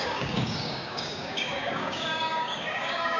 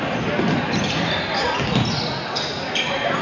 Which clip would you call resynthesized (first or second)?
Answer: first